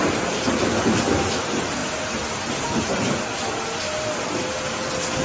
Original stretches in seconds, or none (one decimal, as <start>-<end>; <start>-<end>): 0.0-5.2